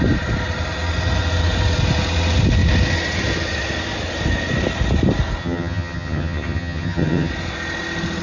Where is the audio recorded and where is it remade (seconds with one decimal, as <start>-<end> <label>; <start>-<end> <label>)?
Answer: 0.0-5.4 recorded; 5.4-7.3 remade; 7.3-8.2 recorded